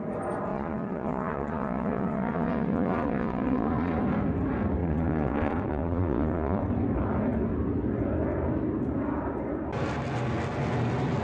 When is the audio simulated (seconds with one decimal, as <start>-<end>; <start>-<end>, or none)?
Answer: 0.5-4.0; 4.8-6.6